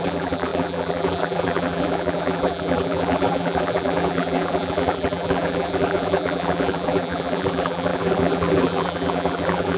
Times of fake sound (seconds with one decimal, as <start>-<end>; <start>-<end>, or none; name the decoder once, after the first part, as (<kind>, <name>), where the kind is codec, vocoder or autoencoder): 0.0-9.8 (vocoder, BigVGAN v2)